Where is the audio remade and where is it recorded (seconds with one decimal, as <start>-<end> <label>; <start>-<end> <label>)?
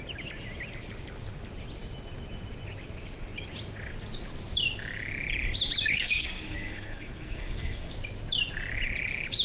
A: 0.0-5.9 recorded; 5.9-7.9 remade; 7.9-9.4 recorded